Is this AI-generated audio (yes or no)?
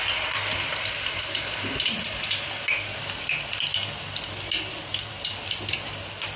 no